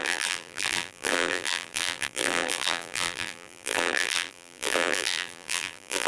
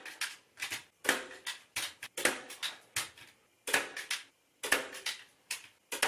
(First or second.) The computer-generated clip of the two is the first